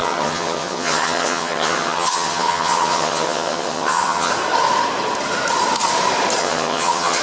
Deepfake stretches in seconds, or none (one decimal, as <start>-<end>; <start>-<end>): 0.0-4.3; 6.4-7.2